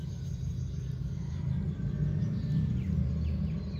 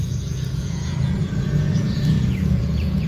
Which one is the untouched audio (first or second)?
first